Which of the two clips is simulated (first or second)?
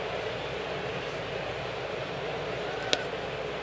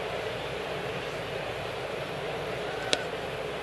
second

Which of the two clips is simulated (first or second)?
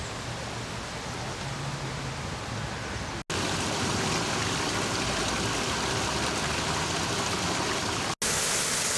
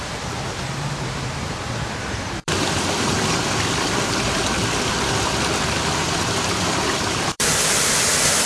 second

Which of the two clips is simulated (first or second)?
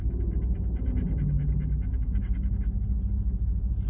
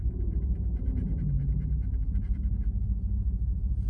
second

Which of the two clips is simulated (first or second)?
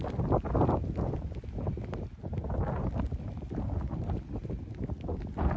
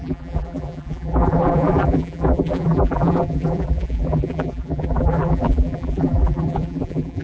second